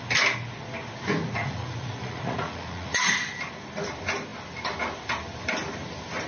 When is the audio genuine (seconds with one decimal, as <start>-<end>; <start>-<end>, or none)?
0.0-1.4; 3.1-6.3